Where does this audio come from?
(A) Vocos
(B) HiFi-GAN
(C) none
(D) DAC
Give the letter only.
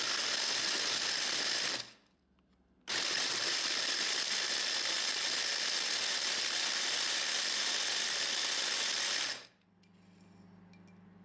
C